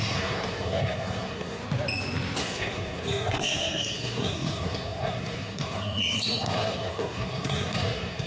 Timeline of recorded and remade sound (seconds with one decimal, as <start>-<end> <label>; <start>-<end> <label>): 0.0-1.6 remade; 1.6-2.4 recorded; 2.4-8.3 remade